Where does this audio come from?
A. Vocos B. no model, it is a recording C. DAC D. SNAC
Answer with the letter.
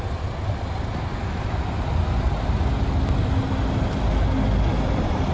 B